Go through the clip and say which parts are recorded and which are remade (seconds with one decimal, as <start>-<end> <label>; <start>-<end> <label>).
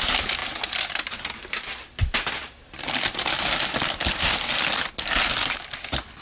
0.0-6.2 recorded